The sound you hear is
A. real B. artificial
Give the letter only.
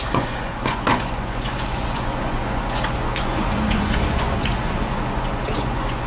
B